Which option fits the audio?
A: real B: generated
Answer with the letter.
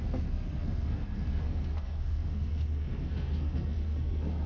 B